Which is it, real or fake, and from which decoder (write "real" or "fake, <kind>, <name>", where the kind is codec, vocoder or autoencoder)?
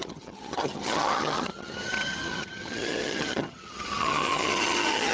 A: fake, vocoder, HiFi-GAN